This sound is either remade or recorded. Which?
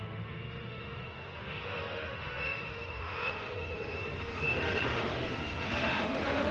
remade